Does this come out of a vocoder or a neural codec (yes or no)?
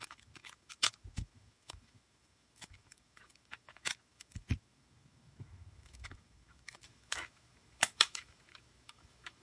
yes